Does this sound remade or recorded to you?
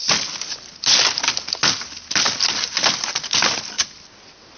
recorded